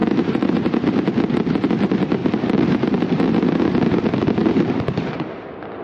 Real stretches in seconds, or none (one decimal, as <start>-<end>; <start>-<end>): 0.9-2.2; 3.3-4.4; 5.1-5.8